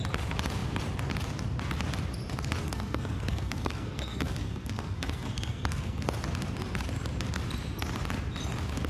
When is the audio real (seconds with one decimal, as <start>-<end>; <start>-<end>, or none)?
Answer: 0.0-2.6; 6.1-8.9